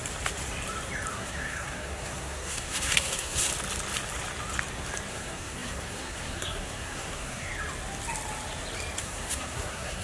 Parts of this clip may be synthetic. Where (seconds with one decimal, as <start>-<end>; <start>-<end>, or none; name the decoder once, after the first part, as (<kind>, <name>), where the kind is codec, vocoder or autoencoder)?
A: 1.1-3.5 (codec, SNAC); 5.1-7.5; 9.0-10.0